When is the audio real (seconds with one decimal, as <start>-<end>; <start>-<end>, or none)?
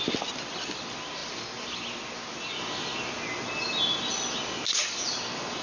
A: 0.0-5.6